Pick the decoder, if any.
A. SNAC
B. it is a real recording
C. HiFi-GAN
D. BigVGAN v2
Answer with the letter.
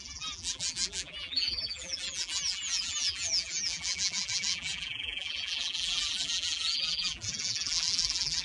D